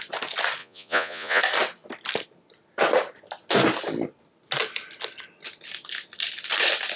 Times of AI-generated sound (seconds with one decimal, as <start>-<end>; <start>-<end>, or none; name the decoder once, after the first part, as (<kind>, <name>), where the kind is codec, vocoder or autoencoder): 0.6-1.4 (vocoder, Vocos)

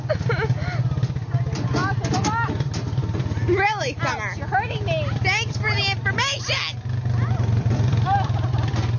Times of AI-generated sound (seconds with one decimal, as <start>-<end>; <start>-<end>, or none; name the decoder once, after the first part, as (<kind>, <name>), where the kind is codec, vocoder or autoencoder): none